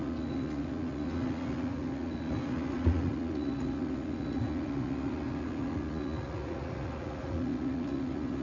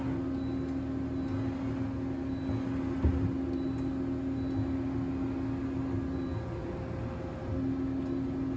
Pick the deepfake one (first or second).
first